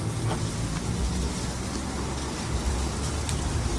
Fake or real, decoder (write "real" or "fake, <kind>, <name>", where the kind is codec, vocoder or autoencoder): real